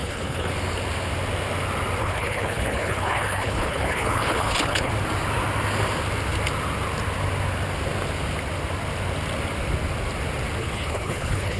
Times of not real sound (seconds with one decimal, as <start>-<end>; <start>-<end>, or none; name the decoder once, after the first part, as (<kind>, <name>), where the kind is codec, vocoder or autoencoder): 0.0-0.5 (codec, HILCodec); 2.0-4.9; 10.6-11.6

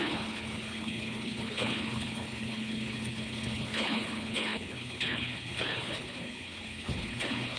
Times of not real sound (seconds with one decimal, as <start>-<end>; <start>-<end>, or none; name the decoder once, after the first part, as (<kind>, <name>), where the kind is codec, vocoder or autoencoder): 0.0-7.6 (codec, HILCodec)